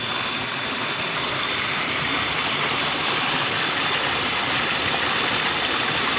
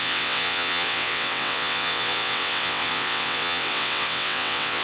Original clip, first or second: first